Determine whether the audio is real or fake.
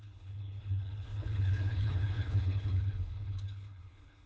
fake